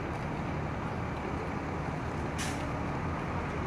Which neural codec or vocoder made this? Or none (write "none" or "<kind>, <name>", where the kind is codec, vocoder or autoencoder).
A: none